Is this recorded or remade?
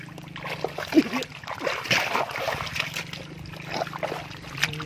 recorded